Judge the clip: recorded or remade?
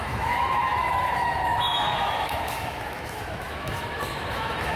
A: remade